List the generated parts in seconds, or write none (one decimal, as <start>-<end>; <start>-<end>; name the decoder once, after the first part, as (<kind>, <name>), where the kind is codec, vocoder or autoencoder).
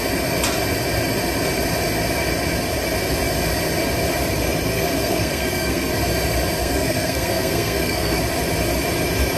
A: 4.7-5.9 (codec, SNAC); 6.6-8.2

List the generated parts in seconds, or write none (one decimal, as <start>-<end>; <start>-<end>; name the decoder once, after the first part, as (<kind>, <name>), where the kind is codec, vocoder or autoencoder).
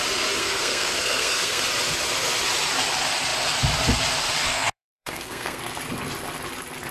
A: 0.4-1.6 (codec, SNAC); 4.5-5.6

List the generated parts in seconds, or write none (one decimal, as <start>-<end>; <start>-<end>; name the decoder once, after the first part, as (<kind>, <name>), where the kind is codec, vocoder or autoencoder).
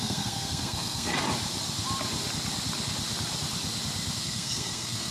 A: 0.0-1.1 (codec, SNAC); 4.2-5.1